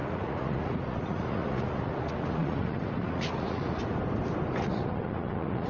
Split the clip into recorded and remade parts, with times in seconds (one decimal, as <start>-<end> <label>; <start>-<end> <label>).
0.0-3.8 remade; 3.8-4.5 recorded; 4.5-5.7 remade